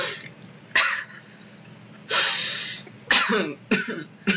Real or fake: real